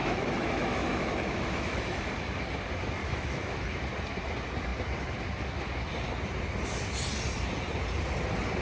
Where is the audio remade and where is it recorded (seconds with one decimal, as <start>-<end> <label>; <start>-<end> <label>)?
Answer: 0.0-2.1 remade; 2.1-3.0 recorded; 3.0-3.8 remade; 3.8-8.6 recorded